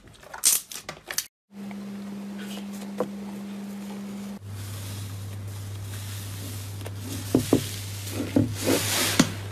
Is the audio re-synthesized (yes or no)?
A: no